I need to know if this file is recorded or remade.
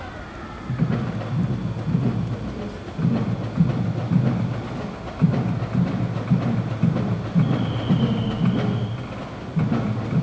recorded